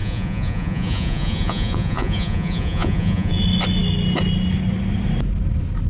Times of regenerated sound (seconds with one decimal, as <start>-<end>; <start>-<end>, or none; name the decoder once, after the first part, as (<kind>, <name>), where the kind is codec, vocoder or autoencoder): 0.0-3.4 (vocoder, Vocos)